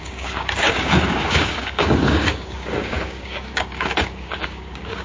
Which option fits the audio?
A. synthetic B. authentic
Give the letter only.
A